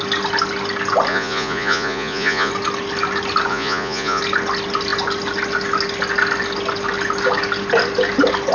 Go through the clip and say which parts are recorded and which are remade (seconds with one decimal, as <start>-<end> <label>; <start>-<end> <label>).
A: 0.0-1.1 recorded; 1.1-2.5 remade; 2.5-3.5 recorded; 3.5-4.2 remade; 4.2-8.5 recorded